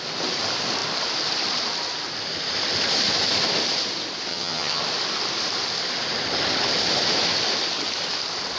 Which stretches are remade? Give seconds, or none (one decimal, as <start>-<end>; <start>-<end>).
4.3-4.8